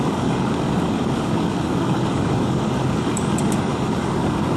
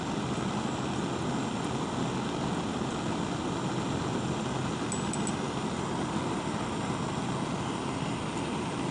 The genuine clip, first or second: second